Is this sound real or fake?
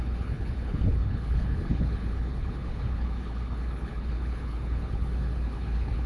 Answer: fake